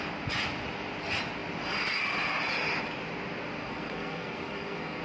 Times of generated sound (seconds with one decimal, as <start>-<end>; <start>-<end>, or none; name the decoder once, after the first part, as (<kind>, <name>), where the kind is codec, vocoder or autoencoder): 3.6-5.0 (codec, SNAC)